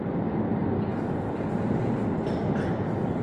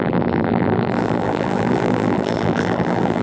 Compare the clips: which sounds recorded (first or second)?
first